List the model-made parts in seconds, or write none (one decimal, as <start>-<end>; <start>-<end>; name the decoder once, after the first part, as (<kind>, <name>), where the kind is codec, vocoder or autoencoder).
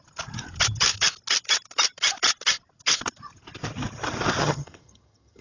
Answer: 4.4-5.4 (vocoder, HiFi-GAN)